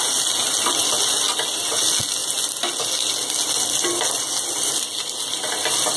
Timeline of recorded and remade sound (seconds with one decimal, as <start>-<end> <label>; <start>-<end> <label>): 0.0-6.0 recorded